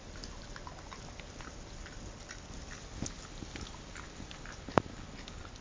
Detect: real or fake real